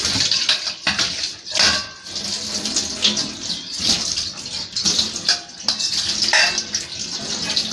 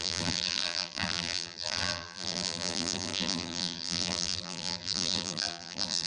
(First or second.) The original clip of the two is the first